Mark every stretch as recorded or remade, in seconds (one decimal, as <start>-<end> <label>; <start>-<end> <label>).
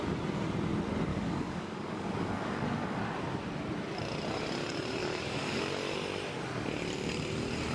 0.0-1.1 recorded; 1.1-3.0 remade; 3.0-5.0 recorded; 5.0-5.6 remade; 5.6-7.7 recorded